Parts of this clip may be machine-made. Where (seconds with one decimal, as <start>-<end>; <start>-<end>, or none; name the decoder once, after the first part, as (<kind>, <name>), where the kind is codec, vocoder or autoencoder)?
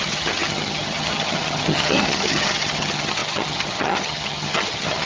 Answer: 0.0-5.1 (vocoder, HiFi-GAN)